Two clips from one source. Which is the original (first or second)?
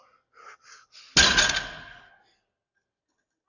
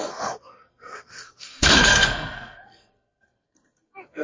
first